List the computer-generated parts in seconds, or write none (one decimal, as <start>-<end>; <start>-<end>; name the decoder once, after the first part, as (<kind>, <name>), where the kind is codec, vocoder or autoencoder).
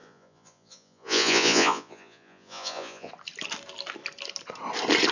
0.0-3.1 (vocoder, Vocos)